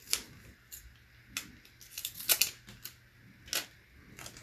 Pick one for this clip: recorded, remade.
recorded